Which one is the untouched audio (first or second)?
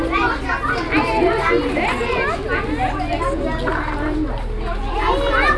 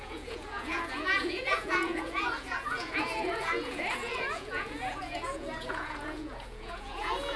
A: first